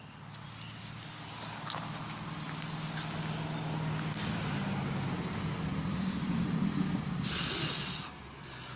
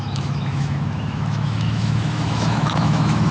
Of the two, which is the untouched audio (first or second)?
first